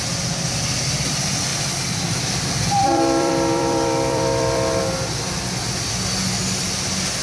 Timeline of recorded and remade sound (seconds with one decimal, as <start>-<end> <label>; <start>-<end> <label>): 0.0-1.5 recorded; 1.5-4.8 remade; 4.8-7.2 recorded